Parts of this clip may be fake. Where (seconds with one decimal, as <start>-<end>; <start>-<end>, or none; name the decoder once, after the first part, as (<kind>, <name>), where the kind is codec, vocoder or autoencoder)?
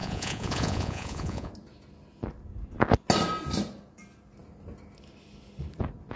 0.0-1.5 (vocoder, Vocos)